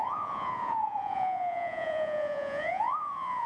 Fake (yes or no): yes